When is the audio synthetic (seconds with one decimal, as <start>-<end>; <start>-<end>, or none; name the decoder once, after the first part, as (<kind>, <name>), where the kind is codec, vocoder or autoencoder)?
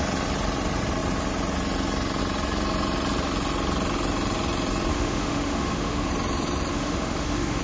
4.9-6.1 (autoencoder, DAC-VAE); 6.7-7.6